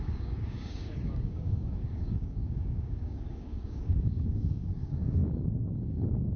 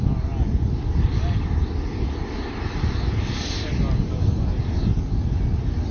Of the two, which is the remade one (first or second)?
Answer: first